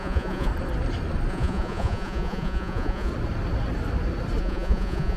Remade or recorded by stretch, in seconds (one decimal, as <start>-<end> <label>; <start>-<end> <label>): 0.0-0.5 remade; 0.5-1.3 recorded; 1.3-3.1 remade; 3.1-4.4 recorded; 4.4-5.2 remade